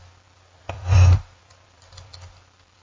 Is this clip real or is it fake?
fake